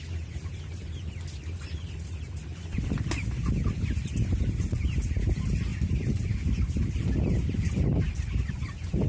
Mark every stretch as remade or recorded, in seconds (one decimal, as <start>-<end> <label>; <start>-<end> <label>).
0.0-9.1 recorded